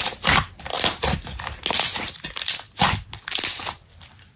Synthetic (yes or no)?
no